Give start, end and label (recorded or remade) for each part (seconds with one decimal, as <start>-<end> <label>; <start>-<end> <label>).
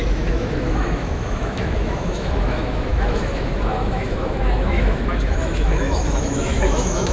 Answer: 0.0-7.1 remade